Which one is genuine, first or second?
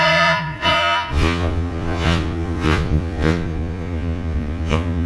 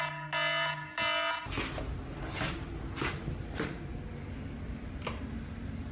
second